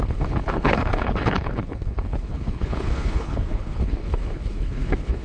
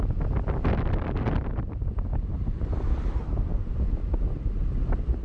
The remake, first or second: first